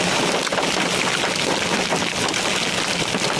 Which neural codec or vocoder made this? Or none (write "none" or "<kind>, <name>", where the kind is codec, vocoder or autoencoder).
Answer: none